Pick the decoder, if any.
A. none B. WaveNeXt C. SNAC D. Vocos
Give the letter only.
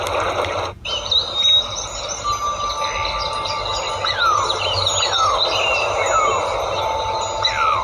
A